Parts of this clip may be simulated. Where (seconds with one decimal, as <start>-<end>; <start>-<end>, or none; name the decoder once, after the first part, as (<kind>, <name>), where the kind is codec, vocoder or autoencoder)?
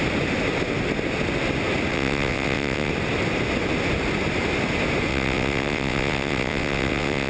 1.9-2.9 (vocoder, WaveNeXt); 5.1-7.3